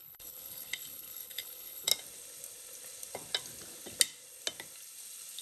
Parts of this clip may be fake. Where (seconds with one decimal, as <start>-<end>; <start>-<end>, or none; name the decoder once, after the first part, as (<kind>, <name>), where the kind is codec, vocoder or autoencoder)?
0.0-1.9 (codec, HILCodec)